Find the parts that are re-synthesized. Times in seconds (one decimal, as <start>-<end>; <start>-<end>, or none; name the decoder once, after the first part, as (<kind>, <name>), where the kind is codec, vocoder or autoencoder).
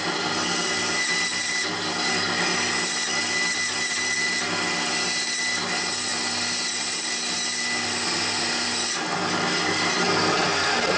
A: none